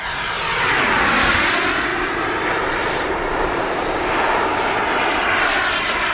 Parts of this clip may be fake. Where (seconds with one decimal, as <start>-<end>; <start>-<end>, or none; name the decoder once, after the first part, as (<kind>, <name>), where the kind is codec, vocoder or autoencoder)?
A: 1.9-5.6 (vocoder, BigVGAN v2)